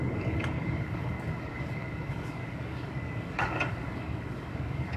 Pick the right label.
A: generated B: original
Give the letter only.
A